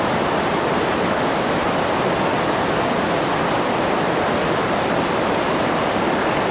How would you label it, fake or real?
real